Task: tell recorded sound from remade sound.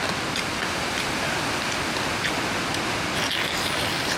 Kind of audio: recorded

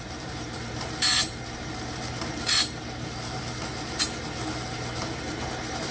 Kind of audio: remade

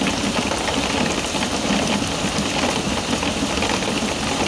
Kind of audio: recorded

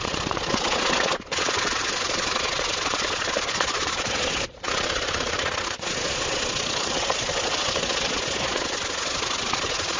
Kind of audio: remade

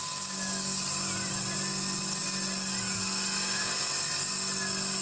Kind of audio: recorded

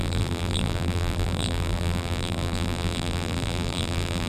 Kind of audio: remade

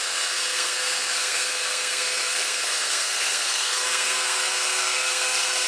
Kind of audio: remade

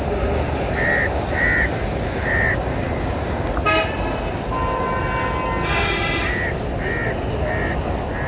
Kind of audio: recorded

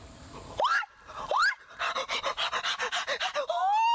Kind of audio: recorded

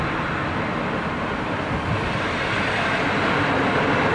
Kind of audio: remade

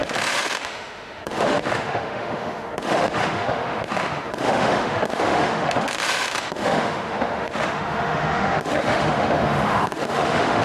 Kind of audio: remade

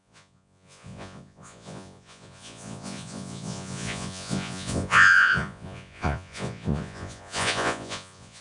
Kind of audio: remade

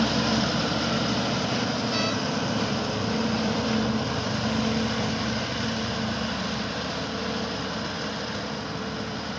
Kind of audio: remade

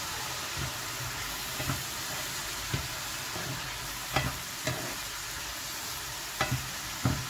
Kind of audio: recorded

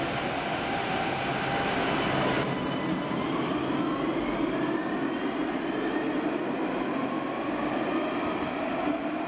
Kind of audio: recorded